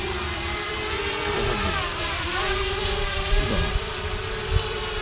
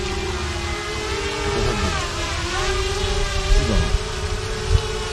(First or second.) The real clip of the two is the second